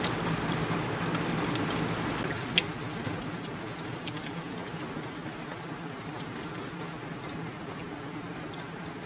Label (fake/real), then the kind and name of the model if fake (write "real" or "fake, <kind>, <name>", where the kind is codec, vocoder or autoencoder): real